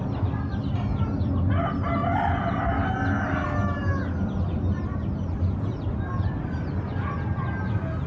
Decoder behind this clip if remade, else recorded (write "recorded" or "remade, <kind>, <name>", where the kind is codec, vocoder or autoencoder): recorded